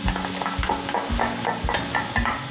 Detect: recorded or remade recorded